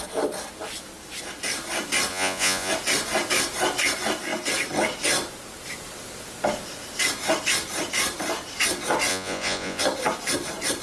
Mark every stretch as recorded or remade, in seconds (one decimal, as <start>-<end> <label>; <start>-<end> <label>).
0.0-2.1 recorded; 2.1-2.7 remade; 2.7-9.1 recorded; 9.1-9.8 remade; 9.8-10.8 recorded